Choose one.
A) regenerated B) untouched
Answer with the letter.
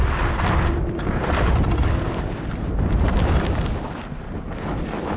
B